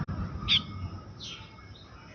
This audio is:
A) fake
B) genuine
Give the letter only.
B